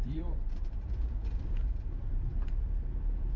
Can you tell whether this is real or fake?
fake